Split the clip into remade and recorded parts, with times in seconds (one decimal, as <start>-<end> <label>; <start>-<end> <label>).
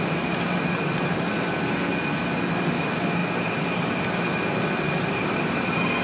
0.0-6.0 recorded